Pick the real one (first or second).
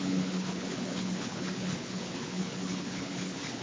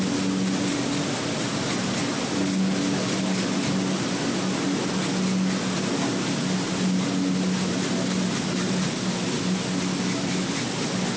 second